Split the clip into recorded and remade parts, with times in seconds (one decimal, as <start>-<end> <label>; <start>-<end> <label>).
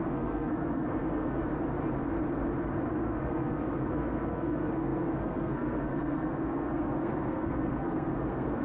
0.0-1.4 remade; 1.4-2.9 recorded; 2.9-8.6 remade